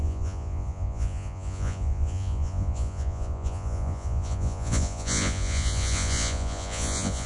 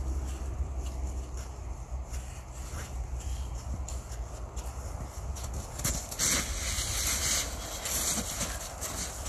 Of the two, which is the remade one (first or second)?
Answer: first